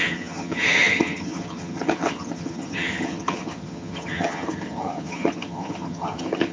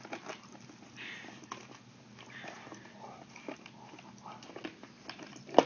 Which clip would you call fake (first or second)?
first